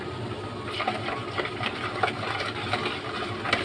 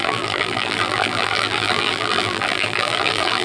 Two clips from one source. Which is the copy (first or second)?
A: second